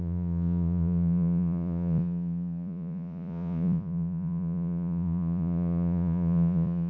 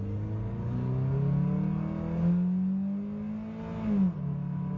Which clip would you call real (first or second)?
second